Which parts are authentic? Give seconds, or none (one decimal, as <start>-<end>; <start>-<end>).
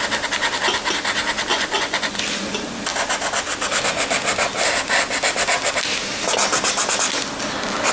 0.0-1.5; 2.2-7.9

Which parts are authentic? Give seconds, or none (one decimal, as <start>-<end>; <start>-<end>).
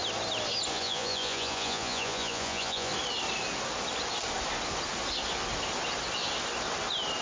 0.0-0.7; 2.9-7.2